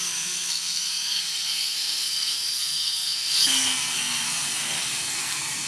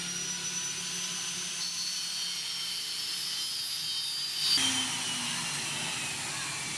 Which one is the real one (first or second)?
second